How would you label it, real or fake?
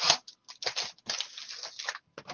real